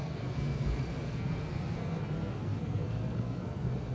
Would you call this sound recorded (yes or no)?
no